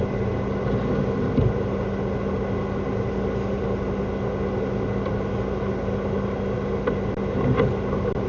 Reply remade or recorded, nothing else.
recorded